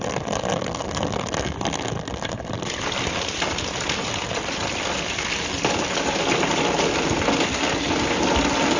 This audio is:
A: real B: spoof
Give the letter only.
A